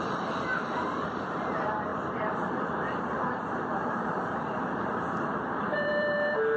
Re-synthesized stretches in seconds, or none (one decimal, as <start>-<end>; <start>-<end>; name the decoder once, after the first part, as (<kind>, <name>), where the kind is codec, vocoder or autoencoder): 0.0-6.6 (vocoder, BigVGAN v2)